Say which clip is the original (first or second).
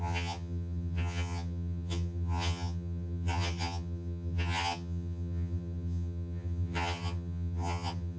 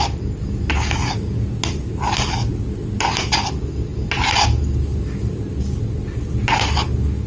second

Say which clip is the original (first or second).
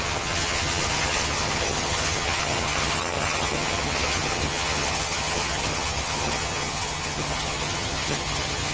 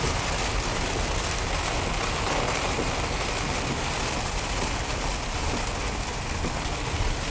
second